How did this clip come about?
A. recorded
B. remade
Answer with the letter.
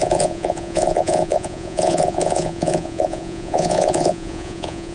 B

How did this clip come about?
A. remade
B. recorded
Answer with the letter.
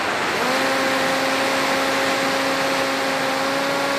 B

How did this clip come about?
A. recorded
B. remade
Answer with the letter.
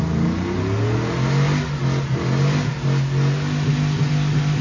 A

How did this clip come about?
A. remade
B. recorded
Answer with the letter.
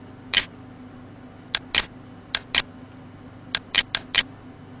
B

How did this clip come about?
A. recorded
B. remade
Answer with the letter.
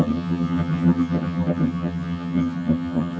B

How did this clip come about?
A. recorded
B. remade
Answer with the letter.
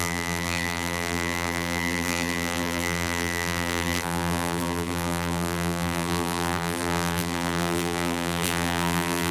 B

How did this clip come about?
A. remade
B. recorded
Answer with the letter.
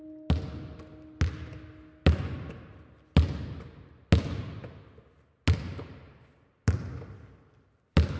B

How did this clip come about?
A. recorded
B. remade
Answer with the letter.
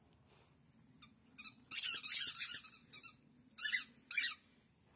A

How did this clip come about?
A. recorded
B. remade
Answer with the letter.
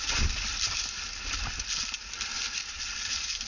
A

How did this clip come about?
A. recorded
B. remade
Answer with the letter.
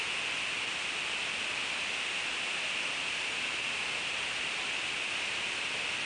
A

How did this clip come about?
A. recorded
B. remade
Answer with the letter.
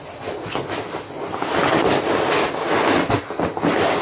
A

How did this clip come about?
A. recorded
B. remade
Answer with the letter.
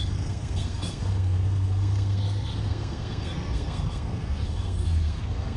B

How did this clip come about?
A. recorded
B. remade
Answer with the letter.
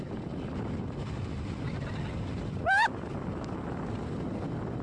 A